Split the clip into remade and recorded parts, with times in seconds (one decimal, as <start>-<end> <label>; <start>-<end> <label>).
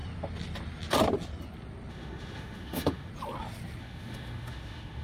0.0-1.9 recorded; 1.9-3.1 remade; 3.1-3.8 recorded; 3.8-5.0 remade